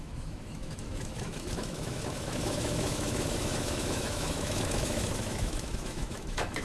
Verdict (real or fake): fake